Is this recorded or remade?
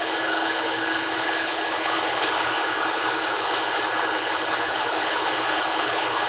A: remade